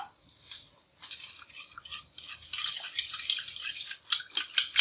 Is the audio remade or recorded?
recorded